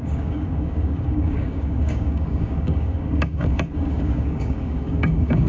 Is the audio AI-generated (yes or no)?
yes